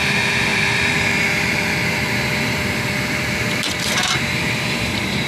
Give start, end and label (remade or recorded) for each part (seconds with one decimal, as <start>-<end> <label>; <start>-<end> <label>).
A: 0.0-5.3 remade